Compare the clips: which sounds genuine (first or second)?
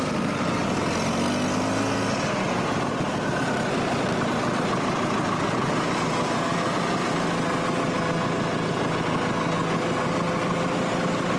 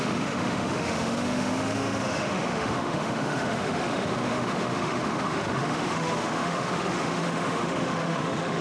first